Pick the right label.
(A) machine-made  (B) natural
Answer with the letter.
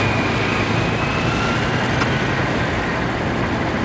B